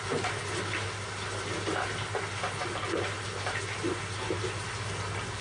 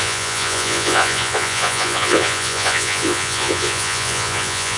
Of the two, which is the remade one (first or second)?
second